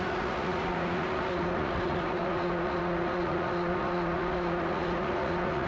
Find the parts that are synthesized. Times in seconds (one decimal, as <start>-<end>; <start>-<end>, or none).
0.0-5.7